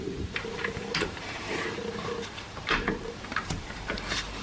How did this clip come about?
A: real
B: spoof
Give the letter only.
B